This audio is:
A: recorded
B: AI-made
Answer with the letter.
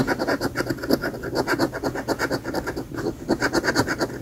A